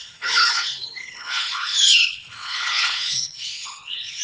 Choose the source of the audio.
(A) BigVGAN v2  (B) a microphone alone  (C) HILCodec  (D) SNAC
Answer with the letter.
C